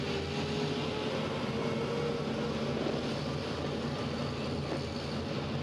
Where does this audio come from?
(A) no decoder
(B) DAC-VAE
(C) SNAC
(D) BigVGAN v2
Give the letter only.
A